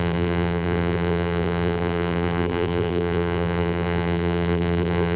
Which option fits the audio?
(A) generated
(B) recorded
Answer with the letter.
A